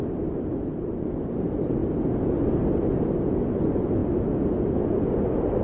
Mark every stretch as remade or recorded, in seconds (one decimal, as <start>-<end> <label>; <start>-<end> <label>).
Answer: 0.0-1.8 remade; 1.8-3.5 recorded; 3.5-4.0 remade; 4.0-5.1 recorded; 5.1-5.6 remade